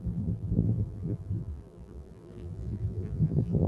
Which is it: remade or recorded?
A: remade